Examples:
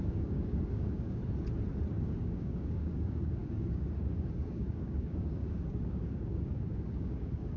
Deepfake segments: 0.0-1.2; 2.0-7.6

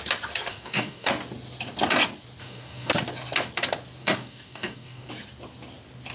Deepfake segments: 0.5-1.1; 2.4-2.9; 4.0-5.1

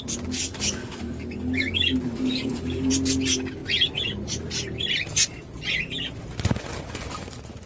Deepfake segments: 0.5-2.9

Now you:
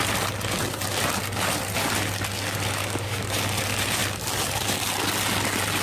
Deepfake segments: 2.8-3.5

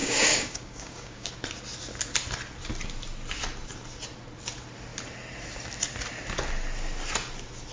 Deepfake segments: 0.0-1.3

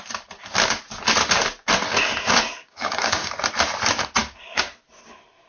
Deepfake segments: 2.6-3.3; 4.2-4.7

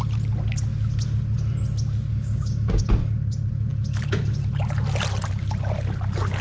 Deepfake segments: 2.1-2.8